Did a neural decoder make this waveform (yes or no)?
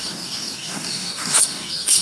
yes